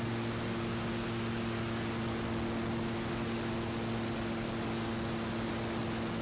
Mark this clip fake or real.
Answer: real